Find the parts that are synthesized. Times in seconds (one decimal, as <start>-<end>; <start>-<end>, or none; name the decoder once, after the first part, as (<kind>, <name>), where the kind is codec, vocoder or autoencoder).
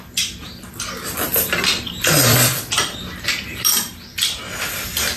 1.3-4.4 (vocoder, BigVGAN v2)